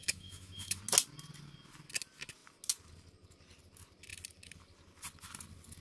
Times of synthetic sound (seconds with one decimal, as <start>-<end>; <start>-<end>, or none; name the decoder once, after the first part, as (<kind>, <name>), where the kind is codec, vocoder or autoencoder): 0.0-0.8 (autoencoder, DAC-VAE)

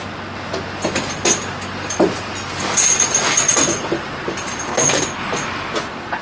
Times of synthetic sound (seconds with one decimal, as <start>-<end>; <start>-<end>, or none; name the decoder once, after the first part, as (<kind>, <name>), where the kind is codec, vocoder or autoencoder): none

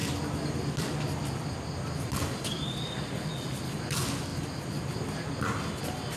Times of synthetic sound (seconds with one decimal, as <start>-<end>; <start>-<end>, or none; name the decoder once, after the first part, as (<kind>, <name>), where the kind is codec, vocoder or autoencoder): none